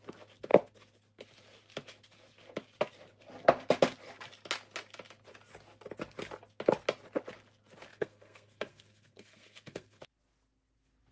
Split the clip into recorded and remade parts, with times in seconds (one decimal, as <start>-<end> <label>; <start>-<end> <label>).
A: 0.0-7.9 recorded; 7.9-10.0 remade; 10.0-11.1 recorded